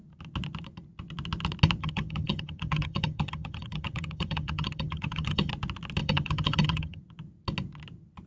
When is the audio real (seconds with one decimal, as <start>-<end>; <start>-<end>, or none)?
0.0-1.8; 5.5-6.0; 7.0-8.3